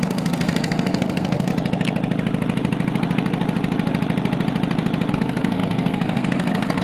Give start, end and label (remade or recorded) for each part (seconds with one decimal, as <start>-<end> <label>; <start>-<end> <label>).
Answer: 0.0-1.5 remade; 1.5-5.1 recorded; 5.1-6.8 remade